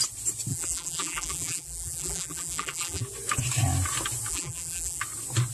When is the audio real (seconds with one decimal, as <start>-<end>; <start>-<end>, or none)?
0.0-0.5; 3.0-4.3; 5.0-5.5